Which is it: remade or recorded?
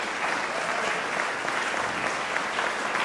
recorded